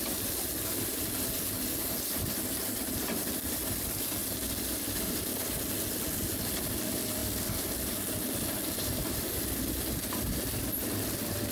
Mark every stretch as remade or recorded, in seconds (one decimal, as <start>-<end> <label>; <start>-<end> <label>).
0.0-11.5 recorded